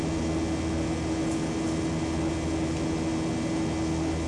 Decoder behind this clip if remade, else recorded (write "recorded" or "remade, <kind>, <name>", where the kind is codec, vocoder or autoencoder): recorded